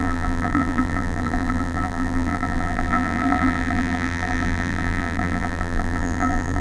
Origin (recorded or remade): remade